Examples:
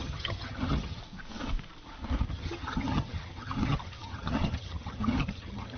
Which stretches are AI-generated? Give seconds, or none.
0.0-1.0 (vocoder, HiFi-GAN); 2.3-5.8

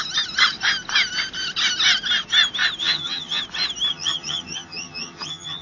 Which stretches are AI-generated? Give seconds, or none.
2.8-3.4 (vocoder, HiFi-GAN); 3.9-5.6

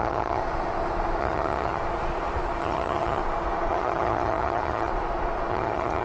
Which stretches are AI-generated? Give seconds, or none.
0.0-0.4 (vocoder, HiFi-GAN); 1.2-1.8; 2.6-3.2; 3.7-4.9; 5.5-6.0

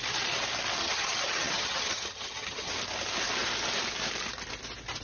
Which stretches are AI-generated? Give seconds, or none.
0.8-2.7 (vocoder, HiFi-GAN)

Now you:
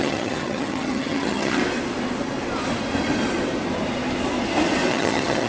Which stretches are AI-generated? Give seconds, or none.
0.0-1.6 (vocoder, HiFi-GAN); 4.9-5.5

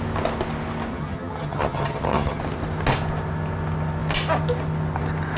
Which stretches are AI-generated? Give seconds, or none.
0.9-2.4 (vocoder, HiFi-GAN)

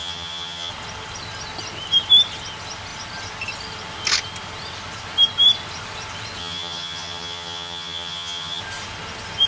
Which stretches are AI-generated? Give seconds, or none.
0.0-0.7 (vocoder, HiFi-GAN); 6.4-8.6

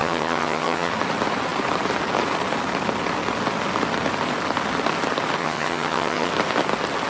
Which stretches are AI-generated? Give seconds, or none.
0.0-0.9 (vocoder, HiFi-GAN); 5.4-6.3